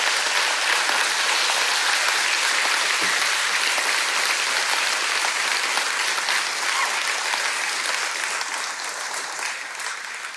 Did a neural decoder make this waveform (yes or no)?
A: no